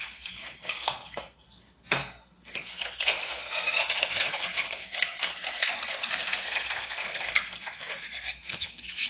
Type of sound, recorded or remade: remade